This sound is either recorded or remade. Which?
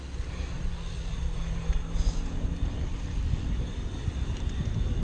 recorded